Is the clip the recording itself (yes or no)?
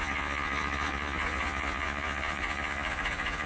no